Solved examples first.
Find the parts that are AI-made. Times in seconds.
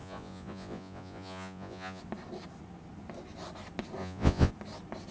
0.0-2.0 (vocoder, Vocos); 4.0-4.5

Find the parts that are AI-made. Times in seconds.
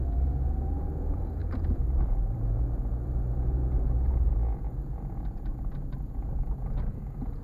0.0-7.4 (vocoder, Vocos)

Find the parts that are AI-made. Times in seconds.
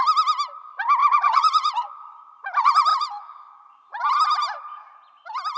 1.0-2.2 (vocoder, Vocos); 2.9-3.7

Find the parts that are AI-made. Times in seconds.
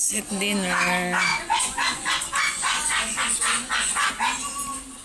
1.3-4.1 (vocoder, Vocos)